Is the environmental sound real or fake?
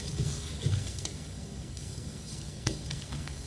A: fake